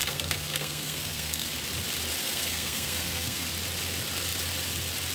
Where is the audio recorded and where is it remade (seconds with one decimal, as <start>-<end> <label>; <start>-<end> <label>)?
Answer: 0.0-1.5 remade; 1.5-2.2 recorded; 2.2-3.5 remade; 3.5-5.1 recorded